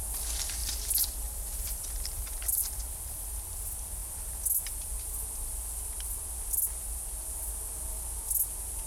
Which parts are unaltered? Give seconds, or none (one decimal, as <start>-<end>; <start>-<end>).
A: 0.0-0.6; 3.5-8.9